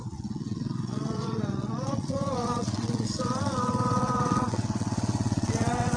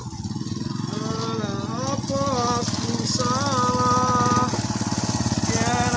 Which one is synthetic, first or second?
first